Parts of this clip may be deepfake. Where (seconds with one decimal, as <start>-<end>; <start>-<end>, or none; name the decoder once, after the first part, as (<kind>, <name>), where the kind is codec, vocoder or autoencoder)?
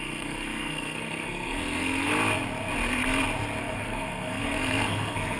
0.0-2.1 (codec, SNAC); 3.6-5.4